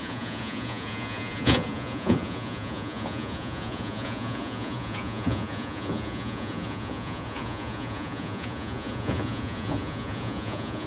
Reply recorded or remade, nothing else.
remade